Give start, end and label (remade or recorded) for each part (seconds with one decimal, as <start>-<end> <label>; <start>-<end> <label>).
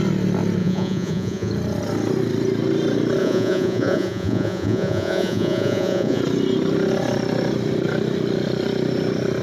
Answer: 0.0-0.6 recorded; 0.6-1.5 remade; 1.5-3.2 recorded; 3.2-6.2 remade; 6.2-9.4 recorded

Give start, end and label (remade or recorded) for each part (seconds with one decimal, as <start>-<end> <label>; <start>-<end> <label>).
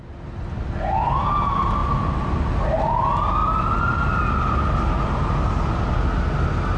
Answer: 0.0-6.8 recorded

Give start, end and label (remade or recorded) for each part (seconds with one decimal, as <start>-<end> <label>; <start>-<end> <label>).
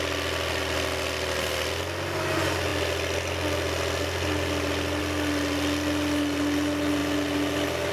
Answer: 0.0-7.9 recorded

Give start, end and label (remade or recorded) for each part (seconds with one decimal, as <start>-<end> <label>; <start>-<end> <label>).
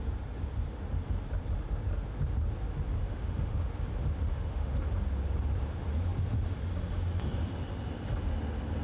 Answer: 0.0-3.0 recorded; 3.0-3.7 remade; 3.7-4.3 recorded; 4.3-4.9 remade; 4.9-8.8 recorded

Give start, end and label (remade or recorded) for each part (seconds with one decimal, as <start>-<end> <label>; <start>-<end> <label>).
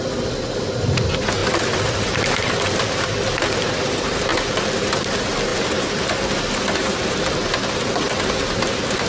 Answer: 0.0-1.4 recorded; 1.4-2.8 remade; 2.8-4.3 recorded; 4.3-5.1 remade; 5.1-9.1 recorded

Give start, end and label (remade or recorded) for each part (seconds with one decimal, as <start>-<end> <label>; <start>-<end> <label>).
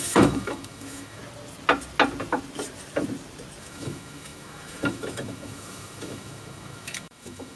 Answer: 0.0-1.2 remade; 1.2-3.6 recorded; 3.6-7.6 remade